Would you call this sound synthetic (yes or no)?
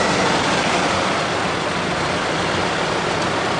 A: no